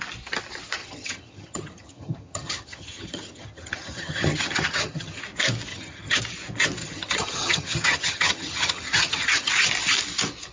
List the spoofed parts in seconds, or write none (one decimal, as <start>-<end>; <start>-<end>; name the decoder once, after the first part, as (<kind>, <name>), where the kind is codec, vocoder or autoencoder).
0.8-5.2 (vocoder, HiFi-GAN); 5.7-6.2; 6.8-9.5